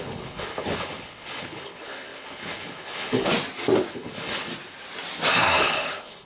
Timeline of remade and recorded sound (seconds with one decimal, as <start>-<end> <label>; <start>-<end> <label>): 0.0-3.3 remade; 3.3-3.9 recorded; 3.9-4.5 remade; 4.5-5.6 recorded; 5.6-6.3 remade